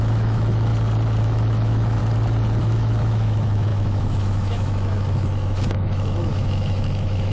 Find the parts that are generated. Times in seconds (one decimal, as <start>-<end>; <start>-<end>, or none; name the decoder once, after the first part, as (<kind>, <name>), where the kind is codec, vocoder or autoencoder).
0.0-0.7 (autoencoder, DAC-VAE); 1.2-2.0; 2.6-7.3

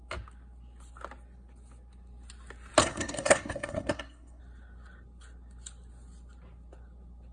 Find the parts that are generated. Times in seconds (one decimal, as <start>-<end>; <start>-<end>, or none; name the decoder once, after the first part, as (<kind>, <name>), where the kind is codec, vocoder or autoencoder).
2.8-4.4 (codec, SNAC)

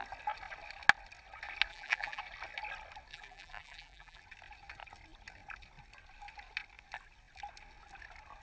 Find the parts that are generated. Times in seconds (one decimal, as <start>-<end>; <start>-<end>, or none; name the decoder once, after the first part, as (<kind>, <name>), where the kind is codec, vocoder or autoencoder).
1.7-2.2 (vocoder, BigVGAN v2); 3.1-4.2

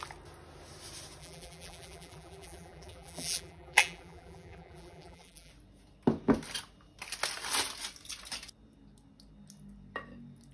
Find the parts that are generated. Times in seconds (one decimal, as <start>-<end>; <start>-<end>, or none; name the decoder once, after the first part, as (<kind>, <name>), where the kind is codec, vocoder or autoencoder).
1.2-5.5 (vocoder, BigVGAN v2)

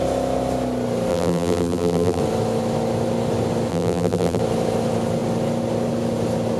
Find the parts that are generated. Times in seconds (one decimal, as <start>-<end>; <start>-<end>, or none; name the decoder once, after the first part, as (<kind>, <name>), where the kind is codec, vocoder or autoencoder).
1.1-2.2 (vocoder, BigVGAN v2); 3.7-4.4

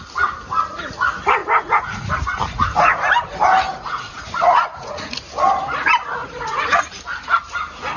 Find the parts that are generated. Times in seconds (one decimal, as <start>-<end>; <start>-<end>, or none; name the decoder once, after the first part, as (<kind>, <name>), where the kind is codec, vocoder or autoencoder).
1.4-2.1 (vocoder, Vocos); 3.7-5.2; 6.2-6.9

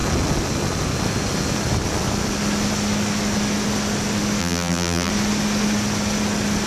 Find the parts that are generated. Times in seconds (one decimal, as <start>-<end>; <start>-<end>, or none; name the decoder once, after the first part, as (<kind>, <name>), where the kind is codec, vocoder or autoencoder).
4.4-5.1 (vocoder, BigVGAN v2)

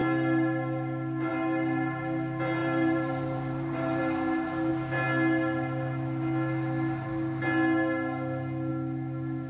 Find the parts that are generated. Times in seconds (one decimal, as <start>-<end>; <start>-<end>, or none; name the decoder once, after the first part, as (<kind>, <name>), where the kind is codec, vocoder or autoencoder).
2.6-4.0 (vocoder, BigVGAN v2)